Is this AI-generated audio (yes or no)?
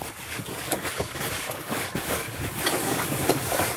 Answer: yes